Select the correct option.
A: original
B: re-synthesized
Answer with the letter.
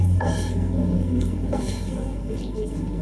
B